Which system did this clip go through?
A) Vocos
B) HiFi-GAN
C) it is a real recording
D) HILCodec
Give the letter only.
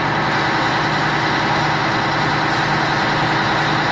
C